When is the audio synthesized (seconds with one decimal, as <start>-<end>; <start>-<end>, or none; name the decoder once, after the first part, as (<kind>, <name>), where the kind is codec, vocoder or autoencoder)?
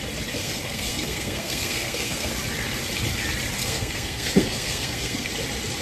0.4-2.3 (codec, SNAC); 3.6-5.3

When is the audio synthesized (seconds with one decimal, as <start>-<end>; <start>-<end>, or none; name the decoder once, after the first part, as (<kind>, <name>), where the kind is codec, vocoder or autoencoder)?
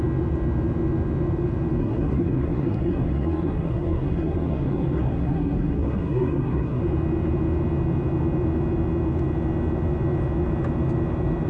1.8-6.8 (codec, SNAC)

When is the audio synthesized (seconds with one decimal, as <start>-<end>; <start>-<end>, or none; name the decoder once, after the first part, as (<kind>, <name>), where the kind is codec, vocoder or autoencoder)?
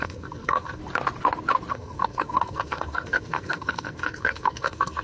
0.0-0.8 (codec, SNAC); 1.7-5.0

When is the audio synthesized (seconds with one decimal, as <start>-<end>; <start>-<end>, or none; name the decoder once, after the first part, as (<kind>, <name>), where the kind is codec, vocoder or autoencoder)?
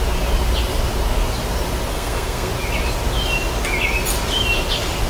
1.9-2.5 (codec, SNAC)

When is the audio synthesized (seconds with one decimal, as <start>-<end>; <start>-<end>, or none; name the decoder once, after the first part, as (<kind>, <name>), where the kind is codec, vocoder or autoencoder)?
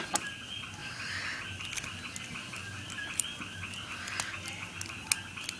none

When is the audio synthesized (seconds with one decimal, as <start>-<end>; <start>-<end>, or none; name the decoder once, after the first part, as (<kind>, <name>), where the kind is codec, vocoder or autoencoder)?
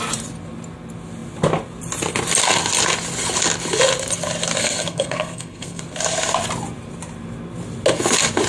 4.6-5.8 (codec, SNAC)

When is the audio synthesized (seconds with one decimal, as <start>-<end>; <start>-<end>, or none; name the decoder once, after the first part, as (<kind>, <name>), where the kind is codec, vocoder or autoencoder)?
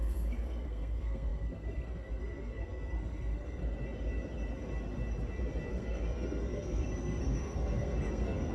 0.0-3.6 (codec, SNAC); 5.7-8.5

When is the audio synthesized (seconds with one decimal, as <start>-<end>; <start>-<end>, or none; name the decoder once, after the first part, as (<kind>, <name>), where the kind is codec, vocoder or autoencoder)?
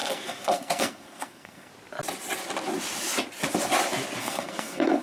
0.0-1.7 (codec, SNAC); 4.2-5.0